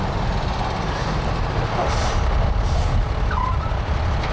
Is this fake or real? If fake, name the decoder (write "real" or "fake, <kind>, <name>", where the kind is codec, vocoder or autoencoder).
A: real